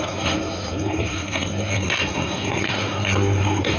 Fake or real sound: fake